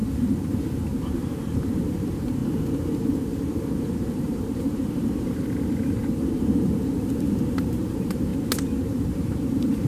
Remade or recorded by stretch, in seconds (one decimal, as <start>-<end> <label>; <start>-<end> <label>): 0.0-8.3 remade; 8.3-8.8 recorded; 8.8-9.9 remade